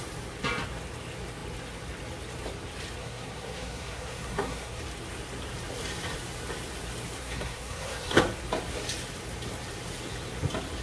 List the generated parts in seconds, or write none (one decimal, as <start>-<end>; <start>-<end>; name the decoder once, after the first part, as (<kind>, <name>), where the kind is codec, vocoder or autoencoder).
3.0-4.8 (codec, SNAC); 7.2-8.2